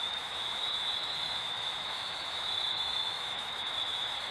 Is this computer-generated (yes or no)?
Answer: yes